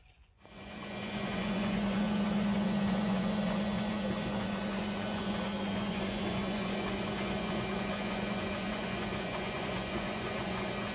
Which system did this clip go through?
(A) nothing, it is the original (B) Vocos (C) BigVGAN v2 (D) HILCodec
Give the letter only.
B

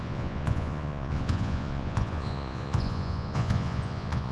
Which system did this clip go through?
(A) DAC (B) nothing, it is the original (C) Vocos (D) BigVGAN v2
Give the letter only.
C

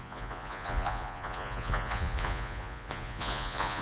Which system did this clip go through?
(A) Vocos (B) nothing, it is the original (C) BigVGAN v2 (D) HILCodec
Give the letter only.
A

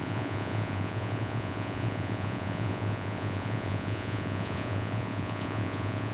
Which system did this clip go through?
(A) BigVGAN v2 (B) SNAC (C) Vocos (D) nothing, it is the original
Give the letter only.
C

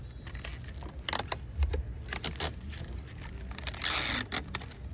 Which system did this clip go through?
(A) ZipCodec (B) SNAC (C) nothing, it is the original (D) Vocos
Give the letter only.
C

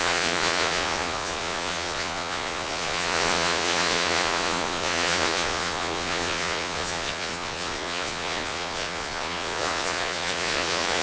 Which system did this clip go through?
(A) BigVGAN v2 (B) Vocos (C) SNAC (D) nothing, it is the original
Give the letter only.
B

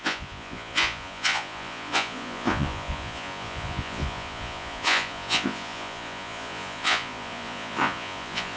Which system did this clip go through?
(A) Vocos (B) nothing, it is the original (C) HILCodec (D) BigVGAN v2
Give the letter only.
A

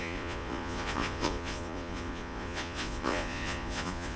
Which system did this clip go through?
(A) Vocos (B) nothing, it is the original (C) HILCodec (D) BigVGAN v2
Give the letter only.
A